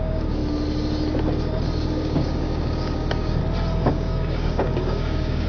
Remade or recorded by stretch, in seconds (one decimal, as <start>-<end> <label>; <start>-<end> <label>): 0.0-0.4 remade; 0.4-1.9 recorded; 1.9-3.4 remade; 3.4-3.9 recorded; 3.9-5.5 remade